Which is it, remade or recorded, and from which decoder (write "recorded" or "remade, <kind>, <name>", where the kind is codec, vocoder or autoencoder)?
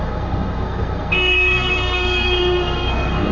remade, codec, SNAC